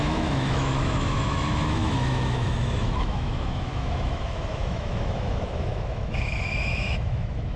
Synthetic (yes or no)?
yes